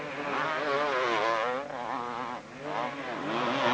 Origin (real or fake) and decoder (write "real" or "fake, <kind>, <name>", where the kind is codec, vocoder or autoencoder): real